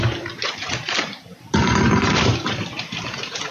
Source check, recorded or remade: remade